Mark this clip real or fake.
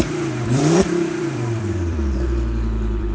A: fake